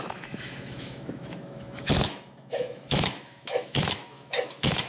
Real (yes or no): no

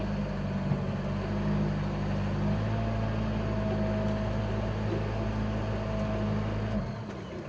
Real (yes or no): yes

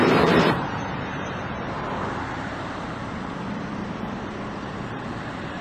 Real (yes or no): no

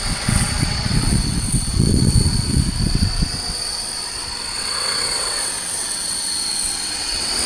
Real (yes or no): no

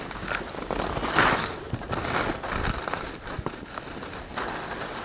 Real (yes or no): yes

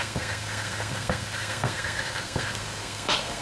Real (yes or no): no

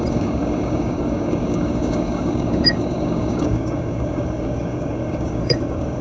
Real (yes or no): no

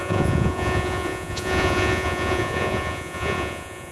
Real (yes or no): no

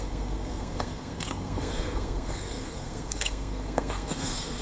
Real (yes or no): no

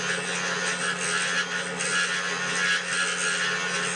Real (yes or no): yes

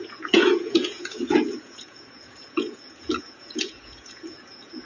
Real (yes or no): no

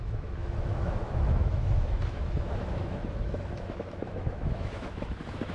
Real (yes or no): no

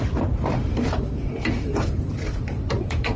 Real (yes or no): no